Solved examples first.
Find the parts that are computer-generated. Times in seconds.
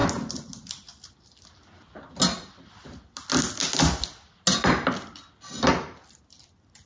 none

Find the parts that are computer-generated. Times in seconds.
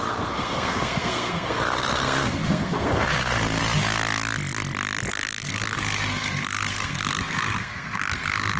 0.0-3.6 (codec, SNAC); 5.1-8.6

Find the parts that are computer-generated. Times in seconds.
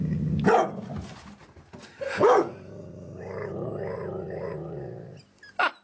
none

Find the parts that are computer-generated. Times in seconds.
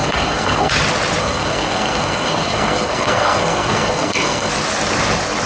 0.0-0.7 (codec, SNAC); 1.2-4.5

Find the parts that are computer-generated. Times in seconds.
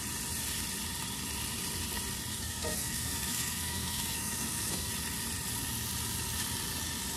2.3-4.9 (codec, SNAC)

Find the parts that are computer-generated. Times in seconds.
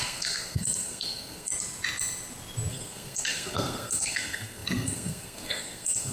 0.0-1.5 (codec, SNAC); 2.7-6.1